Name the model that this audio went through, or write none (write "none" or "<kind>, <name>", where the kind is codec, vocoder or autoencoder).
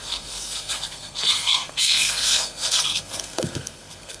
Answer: codec, SNAC